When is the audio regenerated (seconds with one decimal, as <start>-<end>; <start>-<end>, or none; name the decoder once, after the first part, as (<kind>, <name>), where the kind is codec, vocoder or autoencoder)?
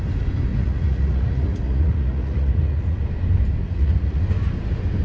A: 0.5-3.0 (vocoder, Vocos); 3.6-4.2